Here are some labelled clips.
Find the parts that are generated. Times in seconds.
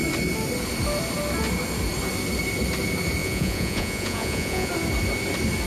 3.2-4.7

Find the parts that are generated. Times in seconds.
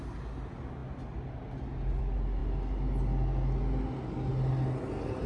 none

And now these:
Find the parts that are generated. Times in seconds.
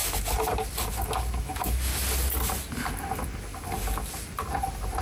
1.4-1.9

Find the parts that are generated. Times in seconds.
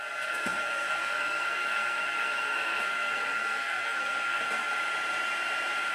0.0-4.7